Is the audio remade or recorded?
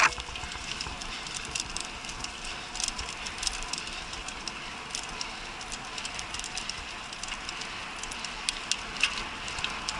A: recorded